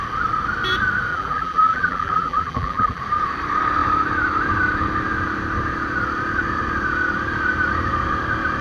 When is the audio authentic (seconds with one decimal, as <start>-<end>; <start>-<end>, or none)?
0.0-1.1; 3.0-8.6